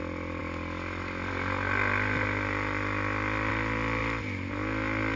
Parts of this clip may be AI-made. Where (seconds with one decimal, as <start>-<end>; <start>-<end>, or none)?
none